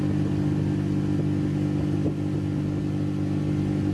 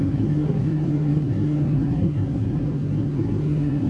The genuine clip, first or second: first